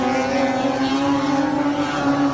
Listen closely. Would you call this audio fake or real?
real